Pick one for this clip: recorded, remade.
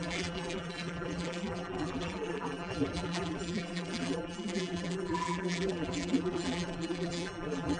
remade